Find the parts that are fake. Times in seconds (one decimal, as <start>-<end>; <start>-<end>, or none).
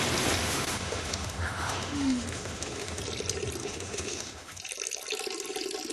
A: 0.4-3.0; 3.6-4.6